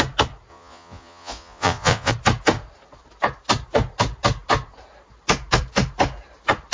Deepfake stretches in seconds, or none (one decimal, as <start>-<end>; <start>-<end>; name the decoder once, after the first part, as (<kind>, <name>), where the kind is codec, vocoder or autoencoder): 0.5-2.1 (vocoder, Vocos)